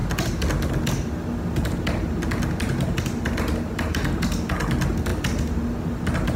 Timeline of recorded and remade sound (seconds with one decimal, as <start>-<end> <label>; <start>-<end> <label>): 0.0-6.4 recorded